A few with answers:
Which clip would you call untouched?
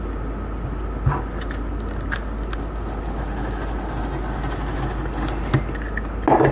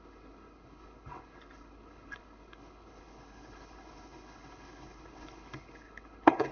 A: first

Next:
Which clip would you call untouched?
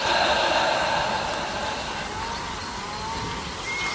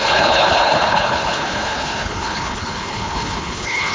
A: first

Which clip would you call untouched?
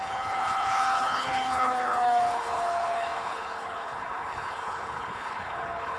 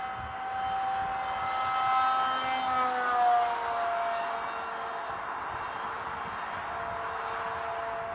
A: second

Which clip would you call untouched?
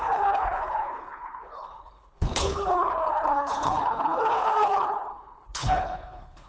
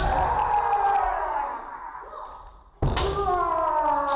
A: second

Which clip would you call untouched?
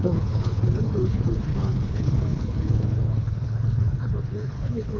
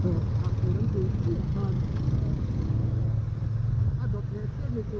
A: second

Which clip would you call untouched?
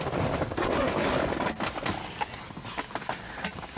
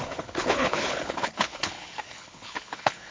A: first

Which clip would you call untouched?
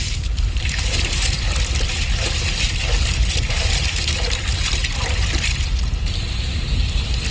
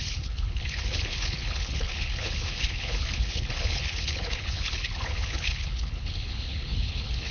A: first